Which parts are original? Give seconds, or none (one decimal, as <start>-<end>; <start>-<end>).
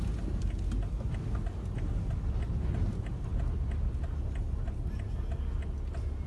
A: 0.0-6.3